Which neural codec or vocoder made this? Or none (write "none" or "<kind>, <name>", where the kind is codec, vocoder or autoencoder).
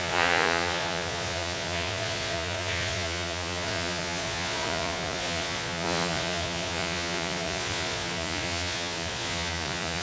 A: vocoder, Vocos